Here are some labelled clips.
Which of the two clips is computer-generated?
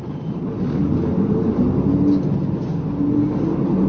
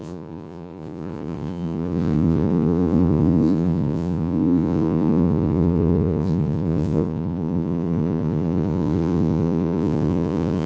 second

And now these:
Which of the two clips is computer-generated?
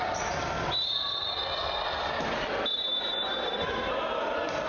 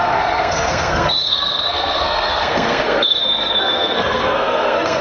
second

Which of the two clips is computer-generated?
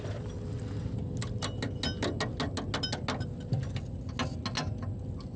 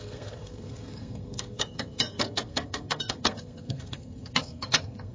second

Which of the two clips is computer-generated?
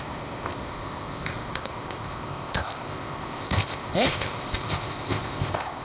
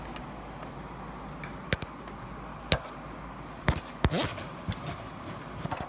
first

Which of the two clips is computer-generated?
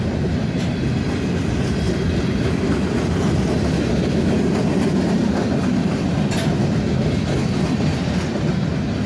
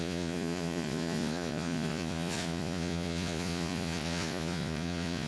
second